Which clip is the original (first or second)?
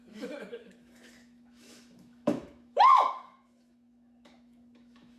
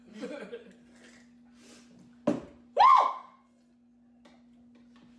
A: second